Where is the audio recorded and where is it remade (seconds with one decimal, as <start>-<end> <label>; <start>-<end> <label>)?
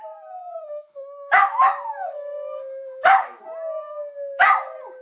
0.0-0.4 recorded; 0.4-3.4 remade; 3.4-5.0 recorded